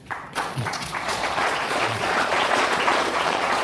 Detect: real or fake fake